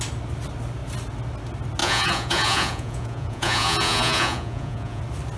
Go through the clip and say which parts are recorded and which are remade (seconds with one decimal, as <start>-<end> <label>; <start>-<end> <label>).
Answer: 0.0-1.8 recorded; 1.8-5.0 remade; 5.0-5.4 recorded